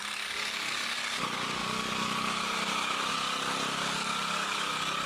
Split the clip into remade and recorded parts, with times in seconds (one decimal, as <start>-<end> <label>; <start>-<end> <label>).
0.0-5.1 remade